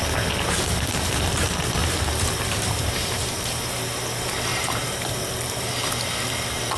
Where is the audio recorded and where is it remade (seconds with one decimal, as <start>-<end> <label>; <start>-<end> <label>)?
0.0-1.8 recorded; 1.8-3.7 remade; 3.7-4.5 recorded; 4.5-5.3 remade; 5.3-6.8 recorded